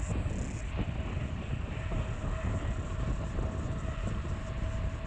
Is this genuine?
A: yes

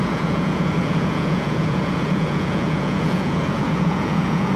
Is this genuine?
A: no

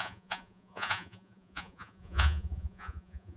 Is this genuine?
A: no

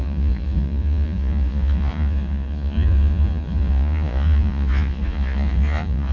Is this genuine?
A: no